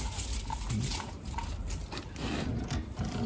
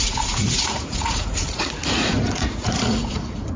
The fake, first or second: second